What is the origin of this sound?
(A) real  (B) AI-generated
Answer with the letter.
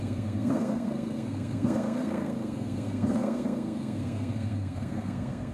B